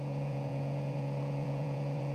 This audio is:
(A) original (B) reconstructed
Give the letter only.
B